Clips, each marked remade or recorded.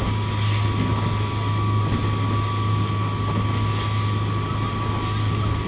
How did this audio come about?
recorded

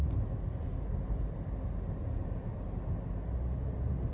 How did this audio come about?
recorded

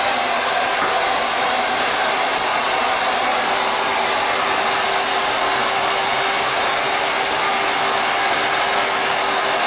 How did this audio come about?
recorded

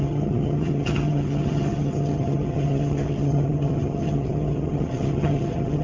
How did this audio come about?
remade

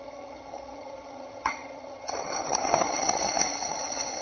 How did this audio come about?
remade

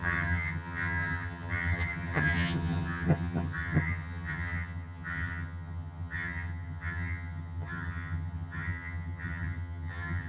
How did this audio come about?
remade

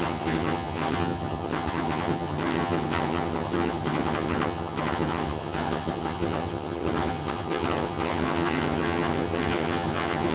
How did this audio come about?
remade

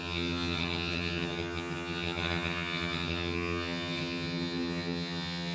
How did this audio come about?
remade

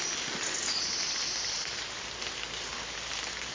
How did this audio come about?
recorded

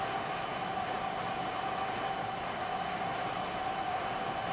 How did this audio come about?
recorded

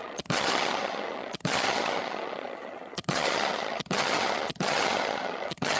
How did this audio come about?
remade